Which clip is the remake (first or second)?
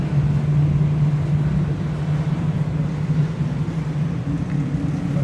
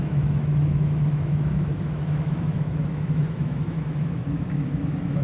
second